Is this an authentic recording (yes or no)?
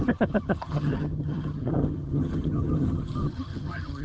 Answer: no